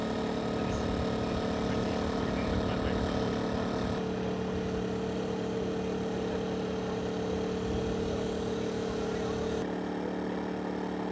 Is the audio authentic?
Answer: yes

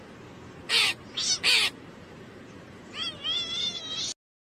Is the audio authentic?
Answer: yes